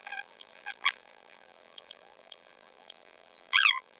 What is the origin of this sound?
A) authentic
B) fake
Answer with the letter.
B